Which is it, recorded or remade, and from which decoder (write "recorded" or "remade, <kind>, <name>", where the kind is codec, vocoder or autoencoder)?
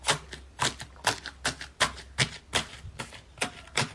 recorded